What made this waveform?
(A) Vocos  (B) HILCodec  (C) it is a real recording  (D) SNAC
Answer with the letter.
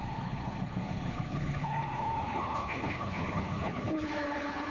B